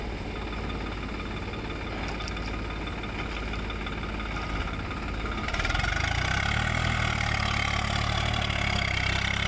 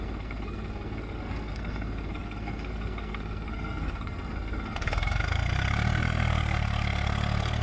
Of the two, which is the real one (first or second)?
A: first